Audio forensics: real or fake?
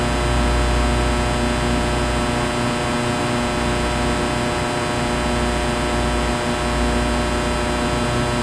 real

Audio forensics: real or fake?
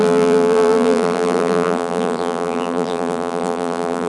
fake